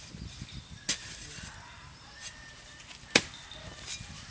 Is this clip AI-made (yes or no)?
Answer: no